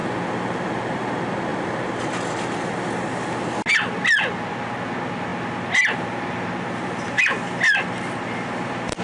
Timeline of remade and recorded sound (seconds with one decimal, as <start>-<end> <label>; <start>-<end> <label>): 0.0-9.0 recorded